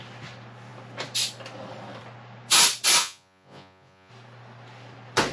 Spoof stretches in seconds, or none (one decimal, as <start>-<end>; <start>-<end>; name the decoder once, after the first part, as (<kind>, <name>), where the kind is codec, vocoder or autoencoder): 3.0-4.1 (vocoder, Vocos)